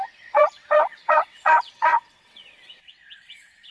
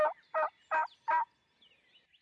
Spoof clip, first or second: first